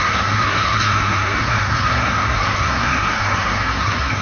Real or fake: fake